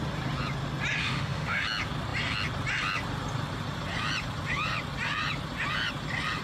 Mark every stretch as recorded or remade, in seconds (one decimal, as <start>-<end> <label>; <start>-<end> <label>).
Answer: 0.0-1.0 recorded; 1.0-1.6 remade; 1.6-6.4 recorded